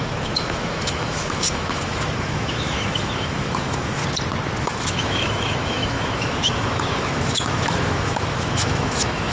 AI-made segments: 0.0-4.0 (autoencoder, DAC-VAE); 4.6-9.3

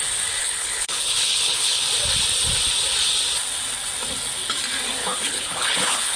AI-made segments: 0.4-1.8 (codec, HILCodec); 5.0-6.2

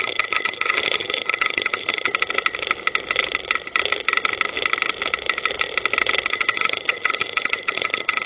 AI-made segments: 0.0-2.1 (vocoder, HiFi-GAN); 6.3-8.3

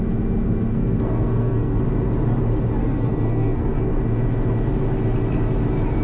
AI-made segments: 0.7-1.8 (codec, SNAC); 2.8-3.9